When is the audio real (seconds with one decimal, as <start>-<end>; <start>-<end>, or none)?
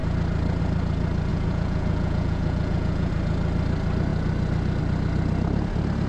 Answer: 0.0-1.3; 3.1-6.1